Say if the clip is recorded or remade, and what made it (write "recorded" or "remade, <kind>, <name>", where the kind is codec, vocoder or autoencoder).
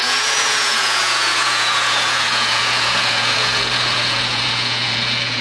remade, vocoder, Vocos